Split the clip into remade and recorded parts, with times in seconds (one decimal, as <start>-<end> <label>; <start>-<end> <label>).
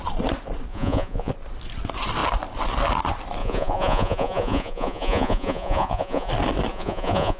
0.0-0.7 recorded; 0.7-1.3 remade; 1.3-3.4 recorded; 3.4-6.3 remade; 6.3-6.7 recorded; 6.7-7.4 remade